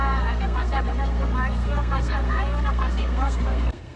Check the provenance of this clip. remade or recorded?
remade